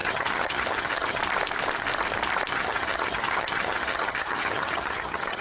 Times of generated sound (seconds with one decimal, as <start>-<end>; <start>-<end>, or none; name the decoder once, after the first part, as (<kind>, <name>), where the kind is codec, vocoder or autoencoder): 0.0-1.2 (vocoder, HiFi-GAN); 2.5-5.4